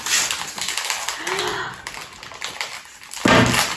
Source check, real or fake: real